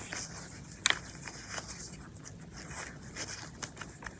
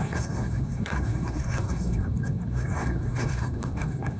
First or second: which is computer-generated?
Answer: second